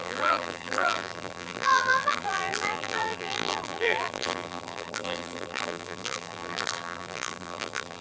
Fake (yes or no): yes